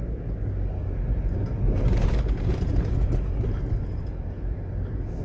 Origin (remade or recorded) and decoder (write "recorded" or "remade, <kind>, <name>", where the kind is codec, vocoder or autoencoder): recorded